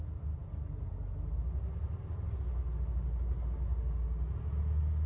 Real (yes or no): yes